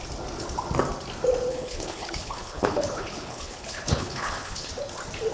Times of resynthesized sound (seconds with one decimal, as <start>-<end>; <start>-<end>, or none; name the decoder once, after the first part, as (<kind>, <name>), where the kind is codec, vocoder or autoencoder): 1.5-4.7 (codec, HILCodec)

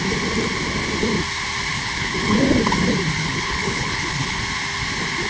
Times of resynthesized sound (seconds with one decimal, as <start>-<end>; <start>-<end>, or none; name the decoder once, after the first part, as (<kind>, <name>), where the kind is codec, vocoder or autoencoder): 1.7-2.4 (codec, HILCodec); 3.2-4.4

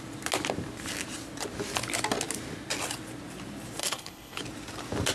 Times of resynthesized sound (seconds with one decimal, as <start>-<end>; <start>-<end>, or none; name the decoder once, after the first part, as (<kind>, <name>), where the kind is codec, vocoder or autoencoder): 3.8-4.4 (codec, HILCodec)

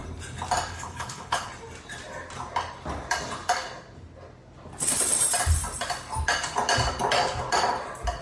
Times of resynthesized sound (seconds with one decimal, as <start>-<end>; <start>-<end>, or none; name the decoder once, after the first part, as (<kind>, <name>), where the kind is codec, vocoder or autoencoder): 0.7-1.5 (codec, HILCodec)

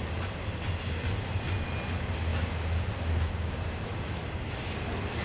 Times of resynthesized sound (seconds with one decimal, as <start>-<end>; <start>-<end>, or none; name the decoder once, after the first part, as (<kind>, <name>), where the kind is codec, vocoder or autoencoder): none